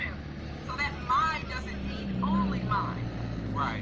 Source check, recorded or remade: recorded